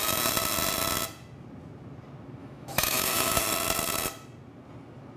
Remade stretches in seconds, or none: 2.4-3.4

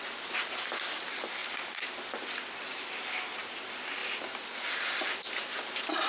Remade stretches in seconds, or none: none

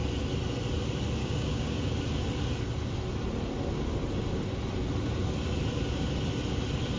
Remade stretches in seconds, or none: 1.2-1.9

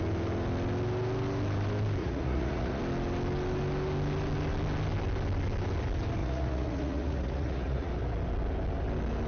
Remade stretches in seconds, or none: 2.0-2.8; 6.2-7.9

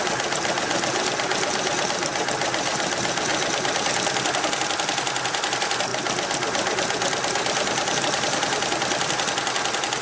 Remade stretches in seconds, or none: none

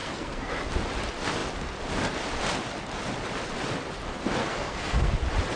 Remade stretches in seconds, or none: 0.0-0.5; 4.4-5.1